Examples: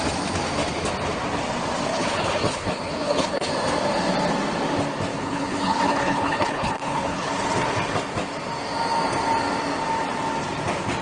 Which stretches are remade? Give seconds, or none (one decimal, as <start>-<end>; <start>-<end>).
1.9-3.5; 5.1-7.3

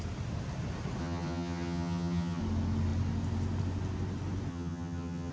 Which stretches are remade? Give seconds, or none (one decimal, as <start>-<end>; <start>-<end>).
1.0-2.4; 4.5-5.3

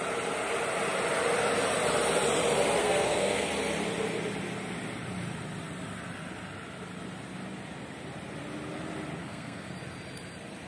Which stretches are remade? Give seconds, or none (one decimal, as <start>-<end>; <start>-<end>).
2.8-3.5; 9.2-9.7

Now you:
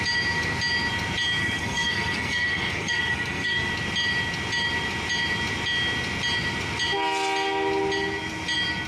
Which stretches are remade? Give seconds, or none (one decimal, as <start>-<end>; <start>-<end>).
1.4-3.7

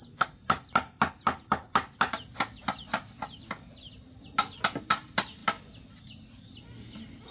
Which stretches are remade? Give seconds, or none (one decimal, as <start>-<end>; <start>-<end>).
none